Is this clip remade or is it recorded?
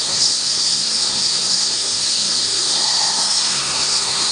remade